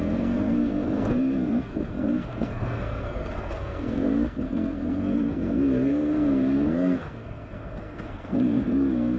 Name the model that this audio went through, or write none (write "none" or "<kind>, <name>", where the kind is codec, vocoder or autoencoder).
codec, SNAC